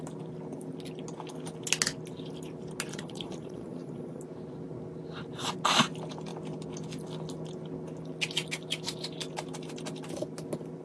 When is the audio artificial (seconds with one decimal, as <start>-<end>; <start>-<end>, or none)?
2.9-4.2